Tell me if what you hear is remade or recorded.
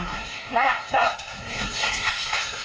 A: remade